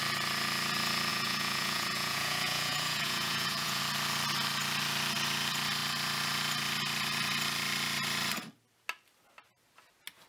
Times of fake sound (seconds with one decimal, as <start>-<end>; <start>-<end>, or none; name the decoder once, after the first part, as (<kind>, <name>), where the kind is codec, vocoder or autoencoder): 1.1-3.8 (vocoder, Vocos)